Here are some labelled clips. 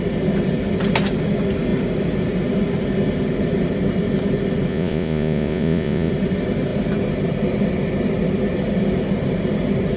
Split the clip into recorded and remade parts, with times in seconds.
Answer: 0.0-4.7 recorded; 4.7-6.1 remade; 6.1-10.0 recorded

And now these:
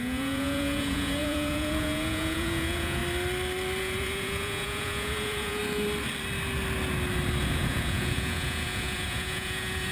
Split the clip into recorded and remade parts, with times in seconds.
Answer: 0.0-3.0 remade; 3.0-3.8 recorded; 3.8-5.6 remade; 5.6-7.4 recorded; 7.4-9.9 remade

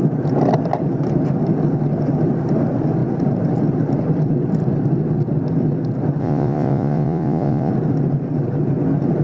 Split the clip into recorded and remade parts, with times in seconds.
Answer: 0.0-6.2 recorded; 6.2-7.7 remade; 7.7-9.2 recorded

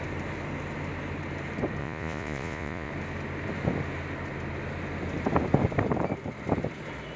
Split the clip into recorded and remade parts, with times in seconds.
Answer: 0.0-1.8 recorded; 1.8-2.9 remade; 2.9-7.2 recorded

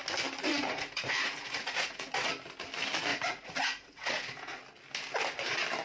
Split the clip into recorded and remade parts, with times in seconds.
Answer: 0.0-0.5 recorded; 0.5-2.3 remade; 2.3-3.1 recorded; 3.1-4.6 remade; 4.6-5.8 recorded

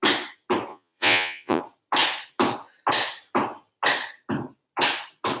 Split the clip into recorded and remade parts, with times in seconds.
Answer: 0.0-0.7 recorded; 0.7-1.6 remade; 1.6-5.4 recorded

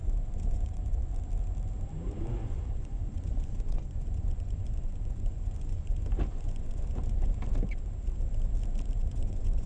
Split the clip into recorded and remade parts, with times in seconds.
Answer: 0.0-1.1 remade; 1.1-2.1 recorded; 2.1-7.3 remade; 7.3-9.0 recorded; 9.0-9.7 remade

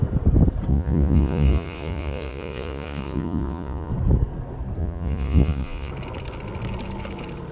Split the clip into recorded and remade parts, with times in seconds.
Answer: 0.0-0.7 recorded; 0.7-3.9 remade; 3.9-4.8 recorded; 4.8-5.9 remade; 5.9-7.5 recorded